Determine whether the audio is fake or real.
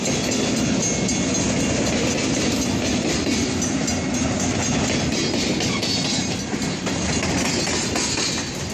real